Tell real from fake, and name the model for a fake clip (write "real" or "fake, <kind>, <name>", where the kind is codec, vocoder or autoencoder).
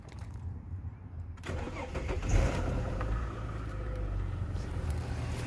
fake, vocoder, BigVGAN v2